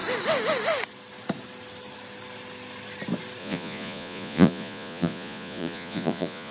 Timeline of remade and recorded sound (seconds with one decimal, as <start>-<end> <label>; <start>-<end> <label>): 0.0-3.4 recorded; 3.4-6.5 remade